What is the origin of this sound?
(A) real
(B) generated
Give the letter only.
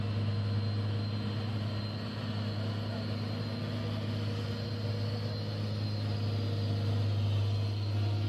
A